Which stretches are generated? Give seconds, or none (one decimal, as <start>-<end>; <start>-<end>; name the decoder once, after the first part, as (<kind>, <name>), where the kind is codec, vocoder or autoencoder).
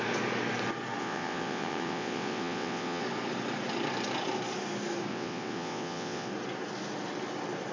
1.0-3.0 (vocoder, WaveNeXt); 5.1-6.3